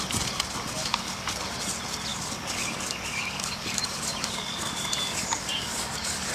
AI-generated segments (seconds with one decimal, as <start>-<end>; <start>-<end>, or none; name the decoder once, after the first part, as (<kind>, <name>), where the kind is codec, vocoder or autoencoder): 0.8-1.4 (codec, DAC); 2.1-6.3